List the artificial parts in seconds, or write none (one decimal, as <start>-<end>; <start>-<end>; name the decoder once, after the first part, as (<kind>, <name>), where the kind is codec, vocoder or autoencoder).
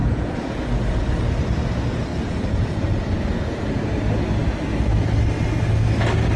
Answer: 0.0-0.6 (vocoder, Vocos); 2.1-3.6